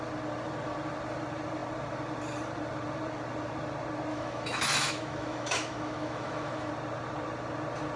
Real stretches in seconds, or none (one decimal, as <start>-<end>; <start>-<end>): 0.0-4.1; 6.7-8.0